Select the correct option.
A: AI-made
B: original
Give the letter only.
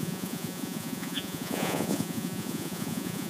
A